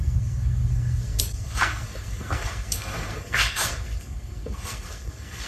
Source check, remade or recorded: remade